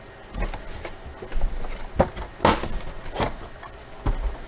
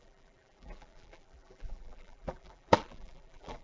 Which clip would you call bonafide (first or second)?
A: first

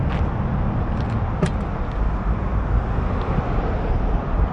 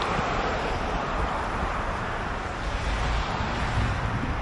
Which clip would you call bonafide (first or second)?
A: first